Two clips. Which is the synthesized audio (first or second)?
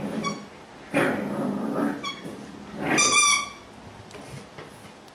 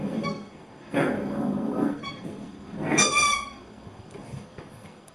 second